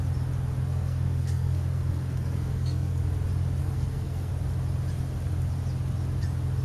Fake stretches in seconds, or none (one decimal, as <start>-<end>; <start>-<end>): 0.7-3.0; 3.6-4.3